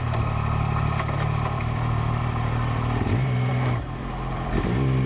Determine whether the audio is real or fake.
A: fake